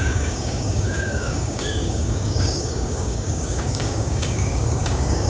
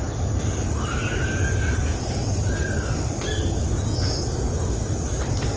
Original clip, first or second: second